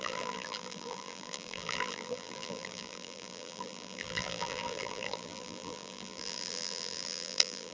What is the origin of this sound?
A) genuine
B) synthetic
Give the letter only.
B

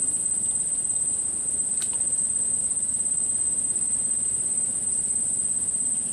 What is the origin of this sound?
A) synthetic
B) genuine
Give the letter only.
A